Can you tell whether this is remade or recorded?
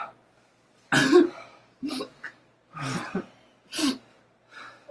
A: recorded